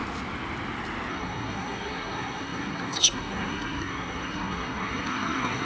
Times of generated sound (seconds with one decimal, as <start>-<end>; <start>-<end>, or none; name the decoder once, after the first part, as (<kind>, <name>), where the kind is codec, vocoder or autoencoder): 1.1-5.7 (codec, SNAC)